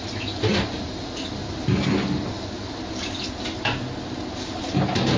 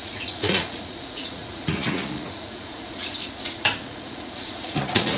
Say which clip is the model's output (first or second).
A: second